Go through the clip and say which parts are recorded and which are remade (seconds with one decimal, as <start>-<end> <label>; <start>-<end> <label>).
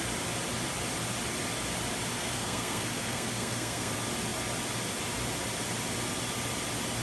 0.0-2.2 recorded; 2.2-3.9 remade; 3.9-7.0 recorded